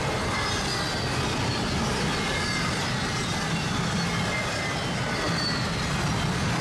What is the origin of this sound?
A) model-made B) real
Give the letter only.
B